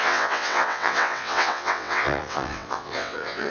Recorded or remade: remade